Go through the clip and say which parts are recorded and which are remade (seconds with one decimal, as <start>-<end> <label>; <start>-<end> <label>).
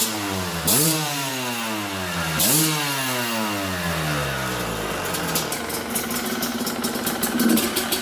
0.0-1.3 remade; 1.3-5.9 recorded; 5.9-8.0 remade